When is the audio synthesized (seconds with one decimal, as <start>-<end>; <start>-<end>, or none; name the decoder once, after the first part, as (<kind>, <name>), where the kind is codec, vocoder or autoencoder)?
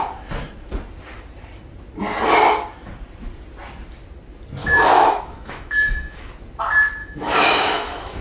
4.6-6.3 (autoencoder, DAC-VAE); 7.0-8.2